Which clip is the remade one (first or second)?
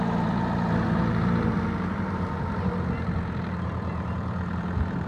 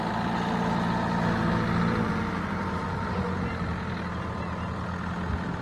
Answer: first